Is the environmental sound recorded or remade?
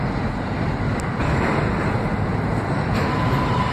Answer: recorded